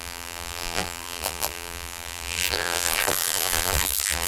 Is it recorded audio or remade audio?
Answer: remade